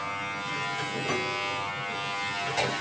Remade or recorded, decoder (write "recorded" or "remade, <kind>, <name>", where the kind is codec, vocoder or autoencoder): recorded